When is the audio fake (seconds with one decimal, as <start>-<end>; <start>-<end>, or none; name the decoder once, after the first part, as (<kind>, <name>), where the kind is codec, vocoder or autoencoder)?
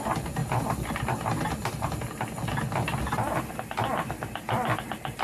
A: none